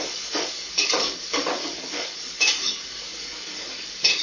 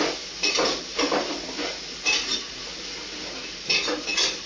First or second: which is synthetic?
first